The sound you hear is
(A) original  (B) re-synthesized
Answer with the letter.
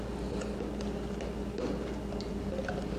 A